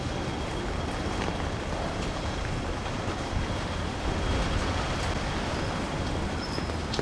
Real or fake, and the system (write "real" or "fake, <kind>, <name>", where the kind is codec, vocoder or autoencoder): real